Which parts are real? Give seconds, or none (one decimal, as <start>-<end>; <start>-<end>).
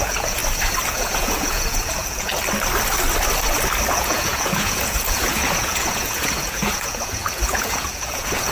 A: 0.4-0.9; 2.3-3.9